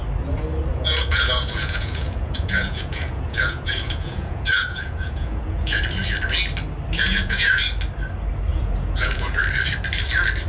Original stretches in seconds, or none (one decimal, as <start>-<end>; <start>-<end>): 0.0-0.7; 5.8-7.0; 7.6-8.5; 9.4-10.5